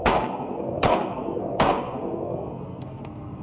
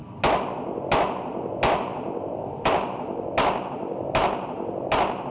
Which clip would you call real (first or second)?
second